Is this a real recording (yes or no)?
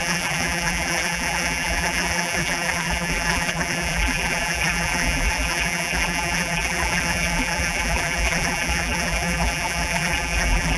no